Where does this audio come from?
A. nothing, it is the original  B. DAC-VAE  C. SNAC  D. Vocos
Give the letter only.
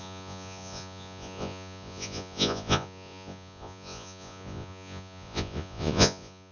D